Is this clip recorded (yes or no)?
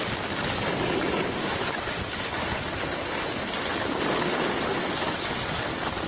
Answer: yes